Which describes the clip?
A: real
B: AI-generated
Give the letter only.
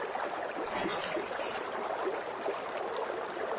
A